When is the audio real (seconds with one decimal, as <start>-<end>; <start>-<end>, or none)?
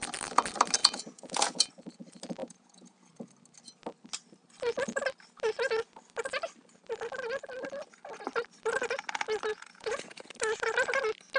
0.0-0.8; 1.7-2.4; 3.1-9.5; 10.2-11.4